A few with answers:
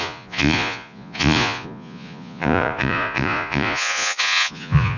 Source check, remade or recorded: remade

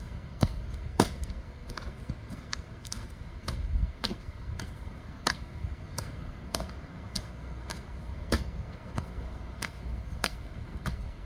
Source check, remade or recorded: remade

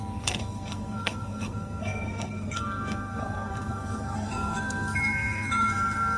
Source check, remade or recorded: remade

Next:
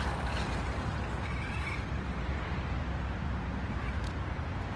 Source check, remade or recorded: recorded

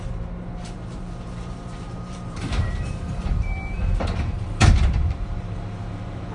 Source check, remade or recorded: remade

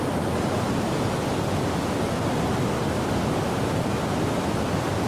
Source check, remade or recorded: recorded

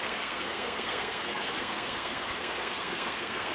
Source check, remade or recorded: remade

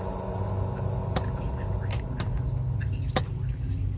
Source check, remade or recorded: recorded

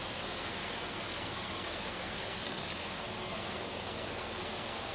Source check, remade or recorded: remade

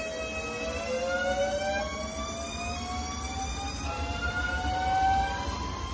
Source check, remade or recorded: recorded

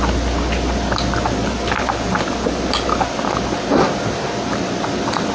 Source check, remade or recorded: recorded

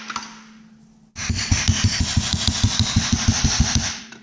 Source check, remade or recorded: recorded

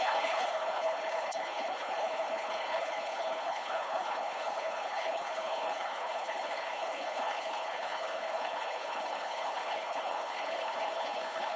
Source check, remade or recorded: remade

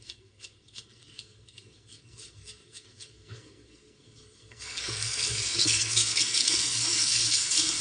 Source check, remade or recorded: remade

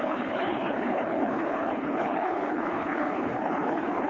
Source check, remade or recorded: remade